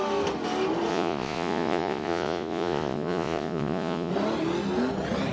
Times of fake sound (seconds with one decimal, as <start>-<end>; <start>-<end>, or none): 0.9-4.1

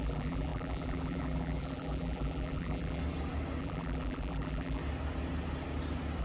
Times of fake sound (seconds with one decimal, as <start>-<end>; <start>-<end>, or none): 0.0-3.0; 3.6-4.8